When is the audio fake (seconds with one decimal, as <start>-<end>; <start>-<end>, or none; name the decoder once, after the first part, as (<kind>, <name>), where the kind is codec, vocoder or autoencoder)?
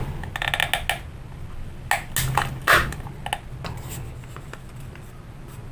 none